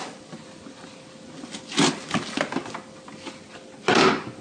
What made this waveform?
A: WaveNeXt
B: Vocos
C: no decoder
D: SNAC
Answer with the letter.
C